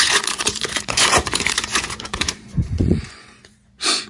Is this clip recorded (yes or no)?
no